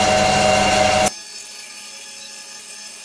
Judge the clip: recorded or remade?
recorded